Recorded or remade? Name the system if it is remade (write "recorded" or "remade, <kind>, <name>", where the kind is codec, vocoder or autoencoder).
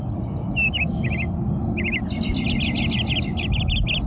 recorded